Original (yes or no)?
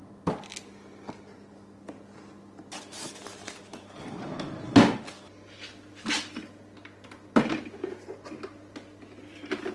yes